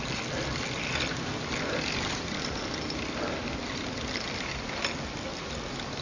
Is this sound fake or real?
real